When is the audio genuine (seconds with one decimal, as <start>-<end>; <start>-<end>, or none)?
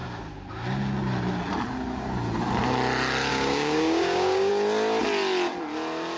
0.0-3.3; 4.5-6.2